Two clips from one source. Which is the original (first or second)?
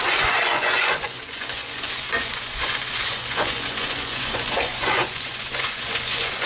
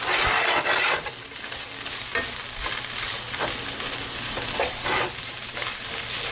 second